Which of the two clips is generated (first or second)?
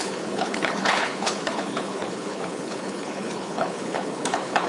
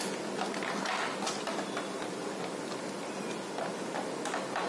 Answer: first